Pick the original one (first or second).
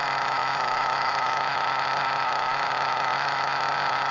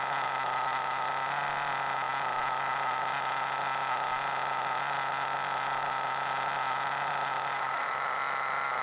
second